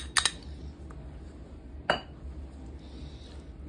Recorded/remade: recorded